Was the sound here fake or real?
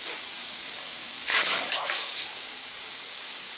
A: fake